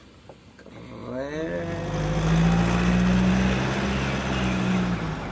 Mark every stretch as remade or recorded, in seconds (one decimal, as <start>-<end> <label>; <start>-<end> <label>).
0.0-5.3 recorded